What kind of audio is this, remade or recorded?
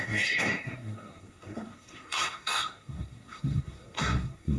remade